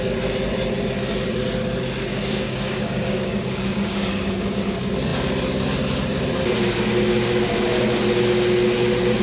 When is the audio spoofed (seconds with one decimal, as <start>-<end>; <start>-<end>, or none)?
2.1-4.6